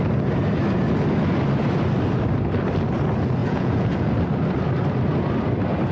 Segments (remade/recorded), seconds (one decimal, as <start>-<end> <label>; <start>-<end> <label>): 0.0-3.4 recorded; 3.4-4.1 remade; 4.1-5.9 recorded